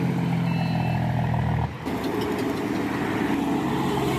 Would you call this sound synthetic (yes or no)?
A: no